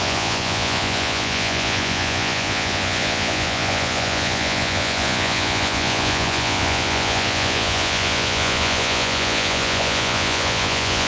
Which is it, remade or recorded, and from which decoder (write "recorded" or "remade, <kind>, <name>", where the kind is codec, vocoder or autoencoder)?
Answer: remade, vocoder, Vocos